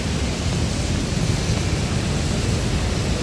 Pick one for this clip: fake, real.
real